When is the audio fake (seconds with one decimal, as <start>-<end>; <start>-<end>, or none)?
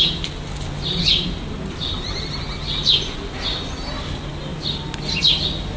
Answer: none